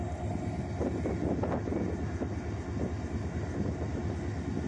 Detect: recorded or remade recorded